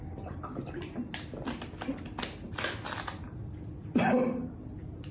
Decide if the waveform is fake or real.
real